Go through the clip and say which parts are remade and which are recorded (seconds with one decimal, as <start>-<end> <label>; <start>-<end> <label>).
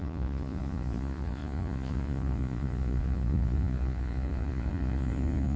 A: 0.0-5.6 remade